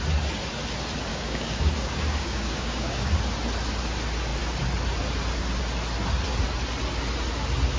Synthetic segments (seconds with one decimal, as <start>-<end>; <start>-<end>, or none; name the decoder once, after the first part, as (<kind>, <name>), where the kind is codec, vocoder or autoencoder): 1.1-3.1 (codec, DAC)